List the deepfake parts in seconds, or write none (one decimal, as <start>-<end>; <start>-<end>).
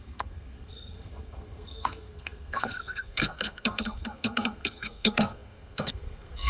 0.0-6.5